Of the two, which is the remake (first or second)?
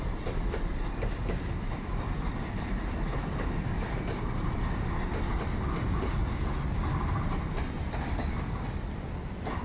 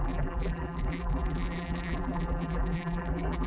second